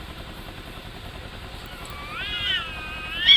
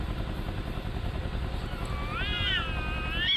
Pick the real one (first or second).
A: second